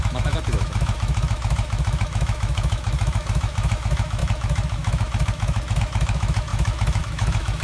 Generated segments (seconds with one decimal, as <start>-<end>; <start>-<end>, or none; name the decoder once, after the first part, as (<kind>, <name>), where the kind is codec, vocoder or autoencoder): 0.0-7.6 (autoencoder, DAC-VAE)